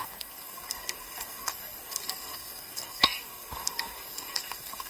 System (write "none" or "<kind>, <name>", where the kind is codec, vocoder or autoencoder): codec, SNAC